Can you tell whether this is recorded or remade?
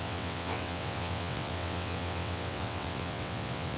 remade